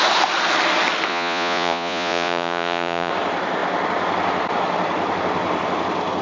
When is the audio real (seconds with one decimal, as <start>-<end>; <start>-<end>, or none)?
0.0-1.1; 3.1-6.2